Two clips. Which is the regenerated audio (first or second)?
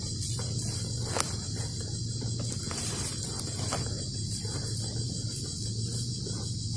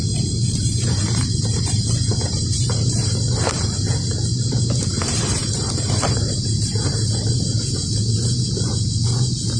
second